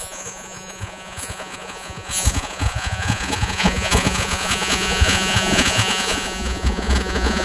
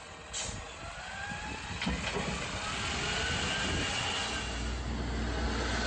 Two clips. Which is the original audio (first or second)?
second